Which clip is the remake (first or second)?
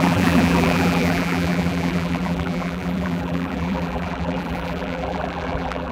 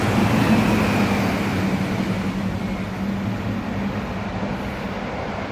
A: first